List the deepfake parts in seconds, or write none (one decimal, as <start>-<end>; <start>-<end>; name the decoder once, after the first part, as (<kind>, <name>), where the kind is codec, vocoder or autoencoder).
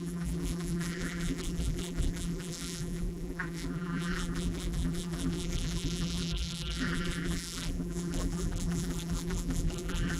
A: 0.0-10.2 (vocoder, BigVGAN v2)